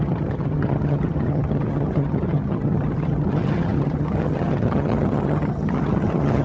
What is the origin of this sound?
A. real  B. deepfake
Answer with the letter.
B